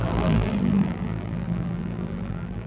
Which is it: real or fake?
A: fake